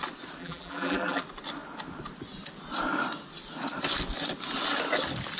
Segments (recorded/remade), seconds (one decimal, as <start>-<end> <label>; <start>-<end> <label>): 0.0-0.4 recorded; 0.4-1.2 remade; 1.2-5.4 recorded